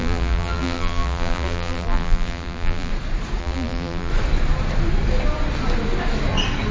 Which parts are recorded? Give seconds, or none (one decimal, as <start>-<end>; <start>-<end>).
2.9-3.4; 4.1-6.7